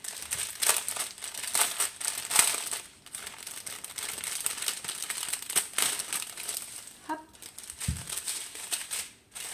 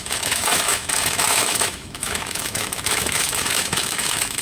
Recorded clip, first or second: first